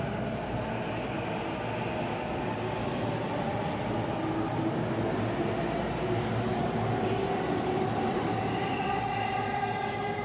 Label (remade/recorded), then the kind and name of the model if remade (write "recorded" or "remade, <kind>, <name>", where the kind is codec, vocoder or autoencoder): recorded